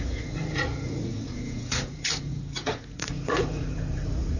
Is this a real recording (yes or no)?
no